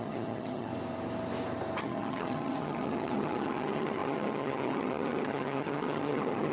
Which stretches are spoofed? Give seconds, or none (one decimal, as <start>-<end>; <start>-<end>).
0.0-0.7; 1.8-6.5